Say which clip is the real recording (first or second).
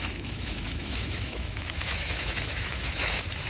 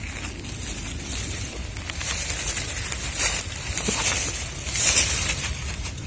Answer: second